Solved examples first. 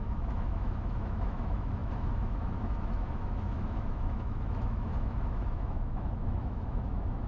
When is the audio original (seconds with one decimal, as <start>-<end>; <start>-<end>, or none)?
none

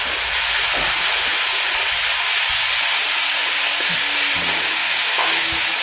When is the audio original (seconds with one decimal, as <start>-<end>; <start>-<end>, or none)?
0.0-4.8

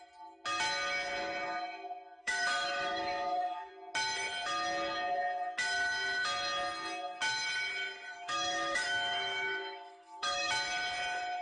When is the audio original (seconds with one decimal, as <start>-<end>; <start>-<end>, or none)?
0.0-2.2; 3.7-8.1; 10.5-11.4

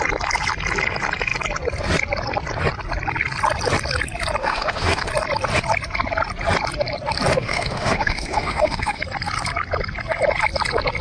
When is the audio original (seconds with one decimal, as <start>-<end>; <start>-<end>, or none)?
0.0-4.4; 5.1-7.3; 9.0-11.0